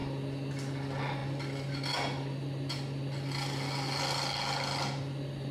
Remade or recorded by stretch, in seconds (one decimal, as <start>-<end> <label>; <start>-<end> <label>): 0.0-5.5 recorded